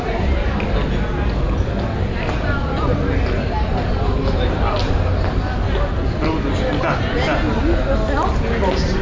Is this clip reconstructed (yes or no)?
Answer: no